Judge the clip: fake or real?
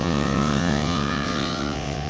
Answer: fake